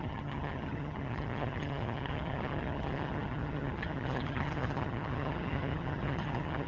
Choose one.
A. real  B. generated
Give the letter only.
B